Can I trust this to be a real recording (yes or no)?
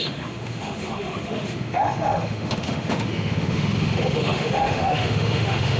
no